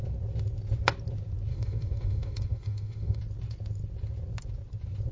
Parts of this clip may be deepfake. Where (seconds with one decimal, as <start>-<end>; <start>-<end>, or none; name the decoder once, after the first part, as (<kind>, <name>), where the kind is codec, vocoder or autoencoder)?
1.5-3.2 (autoencoder, DAC-VAE)